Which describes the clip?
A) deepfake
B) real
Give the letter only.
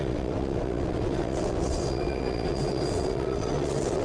A